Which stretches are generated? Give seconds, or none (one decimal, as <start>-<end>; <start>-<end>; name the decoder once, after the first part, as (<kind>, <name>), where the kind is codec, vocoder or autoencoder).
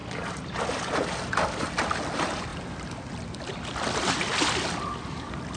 none